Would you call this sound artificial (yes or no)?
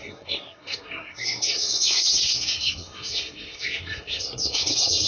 yes